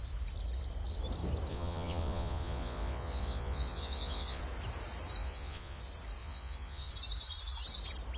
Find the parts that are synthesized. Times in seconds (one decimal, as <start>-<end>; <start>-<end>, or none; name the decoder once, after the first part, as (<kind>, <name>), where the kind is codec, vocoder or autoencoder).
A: 1.5-4.4 (vocoder, Vocos); 5.2-5.8; 6.2-6.9